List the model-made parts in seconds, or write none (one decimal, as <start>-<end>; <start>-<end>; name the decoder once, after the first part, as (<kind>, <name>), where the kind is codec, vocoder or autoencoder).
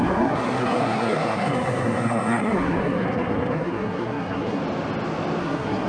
0.0-4.6 (codec, SNAC); 5.4-5.9